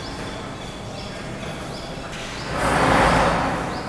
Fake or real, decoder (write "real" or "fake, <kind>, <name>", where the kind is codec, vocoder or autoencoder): real